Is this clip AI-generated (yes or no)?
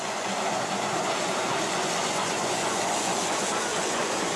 yes